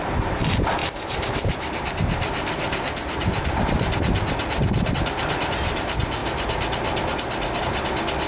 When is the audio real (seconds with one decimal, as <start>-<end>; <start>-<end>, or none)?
0.0-8.3